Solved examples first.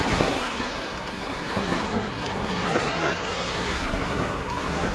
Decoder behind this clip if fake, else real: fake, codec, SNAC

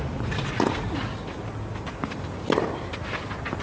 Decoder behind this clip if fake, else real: real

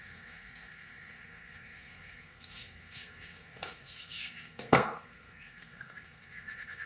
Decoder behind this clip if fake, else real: fake, codec, SNAC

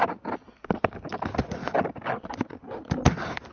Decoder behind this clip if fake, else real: real